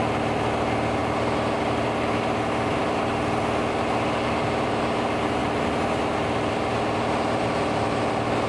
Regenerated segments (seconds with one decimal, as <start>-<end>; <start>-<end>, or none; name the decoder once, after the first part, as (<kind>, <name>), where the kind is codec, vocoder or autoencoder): none